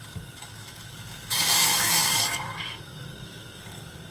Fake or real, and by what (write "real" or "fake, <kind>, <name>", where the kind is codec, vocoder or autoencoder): fake, codec, DAC